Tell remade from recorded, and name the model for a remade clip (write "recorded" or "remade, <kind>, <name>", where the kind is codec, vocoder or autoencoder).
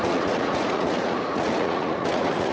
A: remade, vocoder, Vocos